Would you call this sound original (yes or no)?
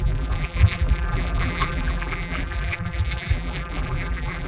no